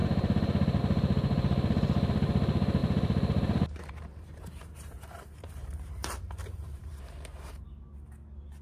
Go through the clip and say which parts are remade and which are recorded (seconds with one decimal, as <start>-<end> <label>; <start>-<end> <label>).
0.0-0.8 remade; 0.8-2.8 recorded; 2.8-7.6 remade; 7.6-8.6 recorded